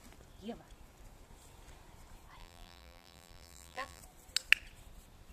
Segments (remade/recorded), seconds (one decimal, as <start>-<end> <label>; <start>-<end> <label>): 0.0-2.4 recorded; 2.4-4.0 remade; 4.0-5.3 recorded